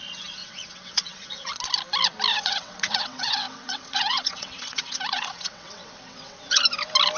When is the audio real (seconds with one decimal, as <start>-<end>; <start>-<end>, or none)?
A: 0.0-0.4; 1.5-2.3; 6.6-7.2